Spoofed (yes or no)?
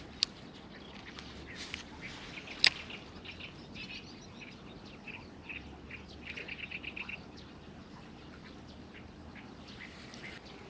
no